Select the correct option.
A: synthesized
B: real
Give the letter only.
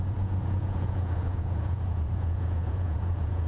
A